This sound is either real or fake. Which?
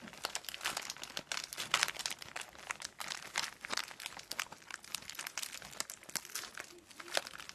real